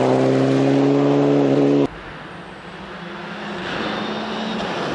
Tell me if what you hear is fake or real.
real